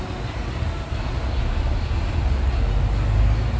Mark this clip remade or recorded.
recorded